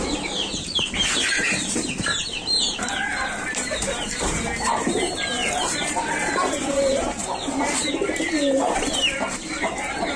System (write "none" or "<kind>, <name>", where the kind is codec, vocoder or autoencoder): vocoder, BigVGAN v2